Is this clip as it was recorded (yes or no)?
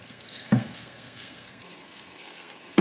no